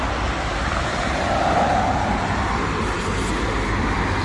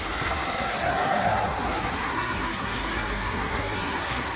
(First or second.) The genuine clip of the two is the first